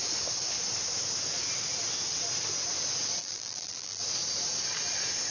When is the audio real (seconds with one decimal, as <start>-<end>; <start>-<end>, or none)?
0.0-3.2; 4.0-5.3